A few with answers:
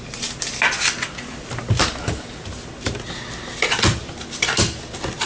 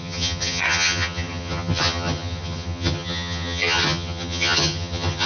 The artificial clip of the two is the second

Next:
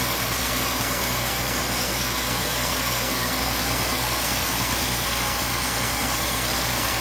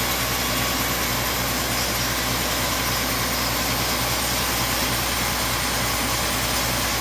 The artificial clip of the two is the first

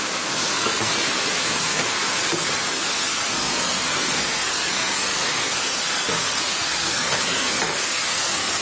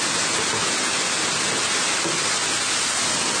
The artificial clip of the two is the first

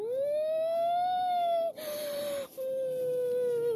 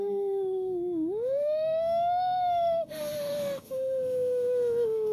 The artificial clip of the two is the second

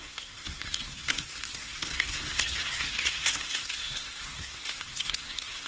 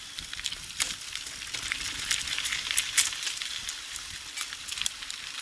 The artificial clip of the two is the first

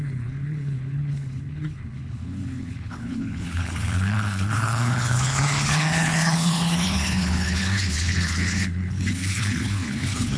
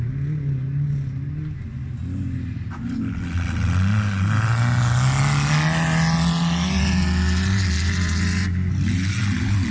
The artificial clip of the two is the first